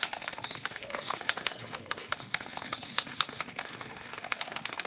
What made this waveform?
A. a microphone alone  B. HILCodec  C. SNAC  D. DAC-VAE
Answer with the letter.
D